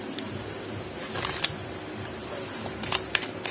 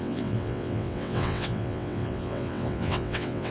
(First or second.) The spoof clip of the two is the second